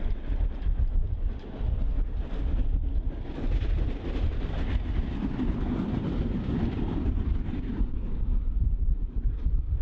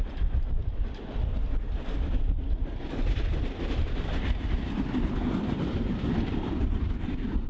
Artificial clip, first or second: second